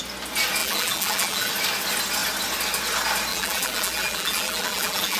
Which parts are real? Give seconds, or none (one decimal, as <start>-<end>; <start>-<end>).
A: 0.0-0.6; 1.5-3.3